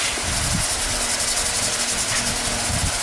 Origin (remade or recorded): recorded